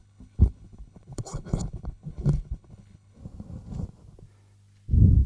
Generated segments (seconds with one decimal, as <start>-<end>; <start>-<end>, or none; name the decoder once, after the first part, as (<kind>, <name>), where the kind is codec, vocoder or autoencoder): 0.0-3.2 (codec, HILCodec)